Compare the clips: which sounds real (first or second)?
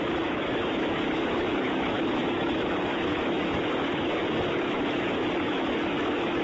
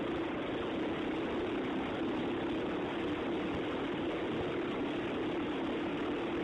second